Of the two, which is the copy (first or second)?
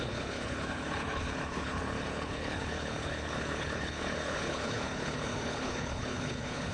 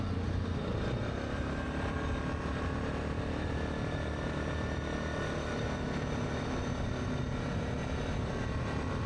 first